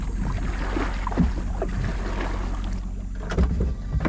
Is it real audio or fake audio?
real